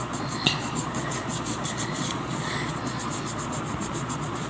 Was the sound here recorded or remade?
remade